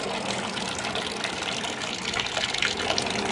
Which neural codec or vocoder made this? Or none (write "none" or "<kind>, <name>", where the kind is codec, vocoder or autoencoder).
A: none